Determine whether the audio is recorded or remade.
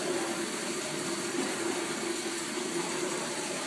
recorded